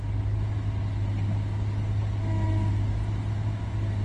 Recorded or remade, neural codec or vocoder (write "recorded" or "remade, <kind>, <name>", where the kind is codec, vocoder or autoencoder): recorded